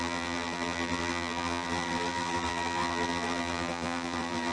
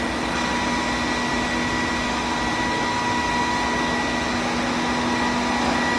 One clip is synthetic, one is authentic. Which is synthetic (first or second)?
first